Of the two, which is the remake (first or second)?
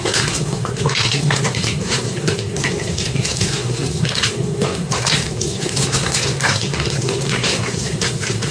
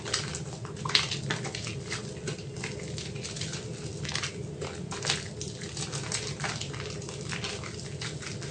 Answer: first